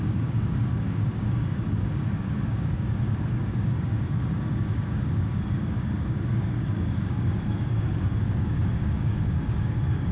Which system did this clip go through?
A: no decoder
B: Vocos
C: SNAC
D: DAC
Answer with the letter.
D